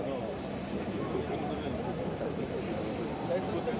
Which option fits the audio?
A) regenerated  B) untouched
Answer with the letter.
A